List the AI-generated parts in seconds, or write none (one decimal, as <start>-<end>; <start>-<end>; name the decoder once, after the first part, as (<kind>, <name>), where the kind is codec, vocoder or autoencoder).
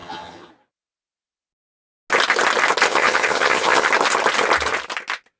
0.0-0.5 (vocoder, HiFi-GAN); 2.9-3.9